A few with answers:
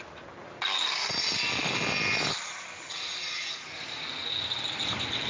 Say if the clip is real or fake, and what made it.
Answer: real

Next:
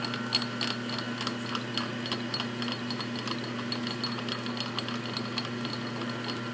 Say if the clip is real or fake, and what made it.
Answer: real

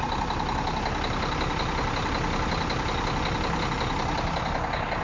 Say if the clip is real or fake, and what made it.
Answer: real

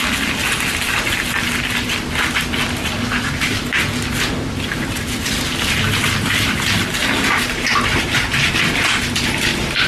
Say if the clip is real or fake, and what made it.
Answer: real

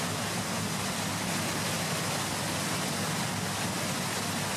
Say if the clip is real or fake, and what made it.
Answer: real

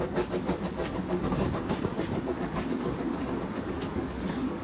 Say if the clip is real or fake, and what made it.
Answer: fake, codec, DAC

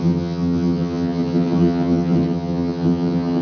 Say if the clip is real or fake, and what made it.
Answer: fake, vocoder, HiFi-GAN